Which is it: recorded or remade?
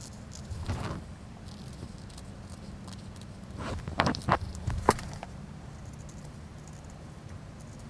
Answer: recorded